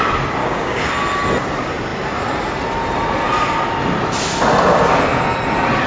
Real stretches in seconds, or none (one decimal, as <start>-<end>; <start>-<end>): 0.0-0.4; 0.9-5.9